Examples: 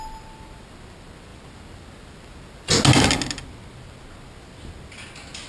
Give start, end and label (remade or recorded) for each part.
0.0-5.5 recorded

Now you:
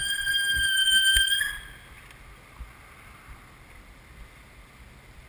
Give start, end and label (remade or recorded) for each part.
0.0-1.4 remade; 1.4-5.3 recorded

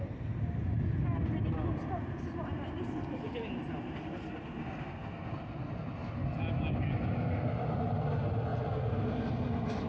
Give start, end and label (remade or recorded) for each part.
0.0-9.9 recorded

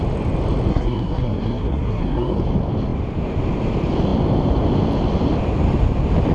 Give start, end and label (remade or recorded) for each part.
0.0-0.7 recorded; 0.7-2.4 remade; 2.4-6.3 recorded